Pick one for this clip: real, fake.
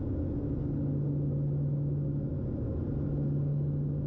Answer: real